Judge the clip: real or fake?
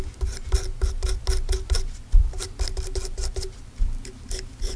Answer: real